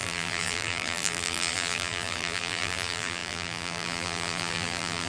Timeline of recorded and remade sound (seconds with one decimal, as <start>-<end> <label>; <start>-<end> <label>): 0.0-5.1 remade